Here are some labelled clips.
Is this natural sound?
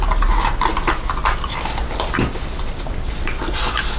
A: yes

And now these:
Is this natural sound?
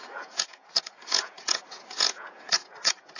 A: no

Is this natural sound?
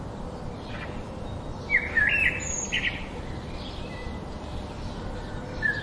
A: yes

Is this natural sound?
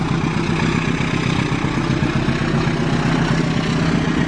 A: yes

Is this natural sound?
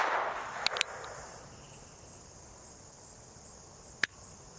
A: yes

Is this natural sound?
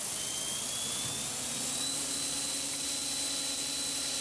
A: yes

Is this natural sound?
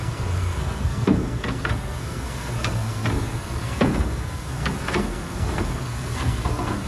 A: no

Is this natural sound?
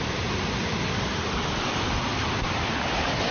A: no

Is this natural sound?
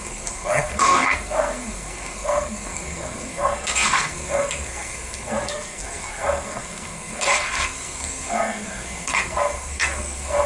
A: no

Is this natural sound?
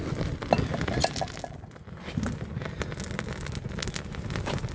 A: yes